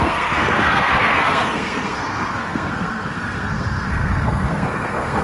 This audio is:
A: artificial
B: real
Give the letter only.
A